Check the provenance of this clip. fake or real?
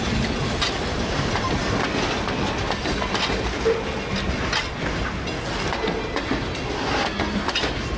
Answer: real